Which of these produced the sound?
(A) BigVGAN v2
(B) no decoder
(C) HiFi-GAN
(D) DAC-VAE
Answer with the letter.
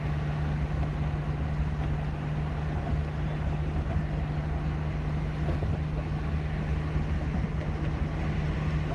B